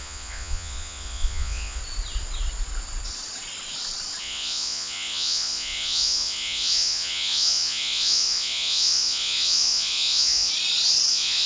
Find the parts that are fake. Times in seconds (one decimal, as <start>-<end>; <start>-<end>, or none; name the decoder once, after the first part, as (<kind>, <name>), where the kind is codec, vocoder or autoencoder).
0.0-1.8 (vocoder, Vocos); 4.2-10.5; 11.1-11.5